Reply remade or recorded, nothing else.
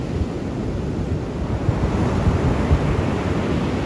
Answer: recorded